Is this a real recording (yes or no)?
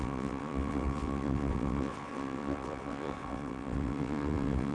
no